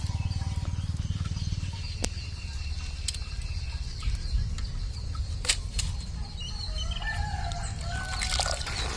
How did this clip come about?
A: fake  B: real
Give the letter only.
B